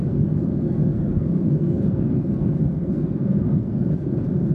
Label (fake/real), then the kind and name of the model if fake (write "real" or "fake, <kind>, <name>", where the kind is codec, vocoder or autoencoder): fake, codec, SNAC